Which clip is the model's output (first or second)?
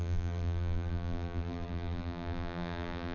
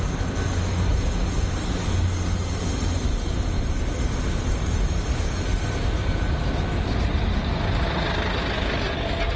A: first